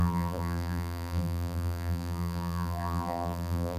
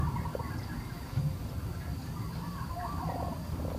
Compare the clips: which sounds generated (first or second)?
first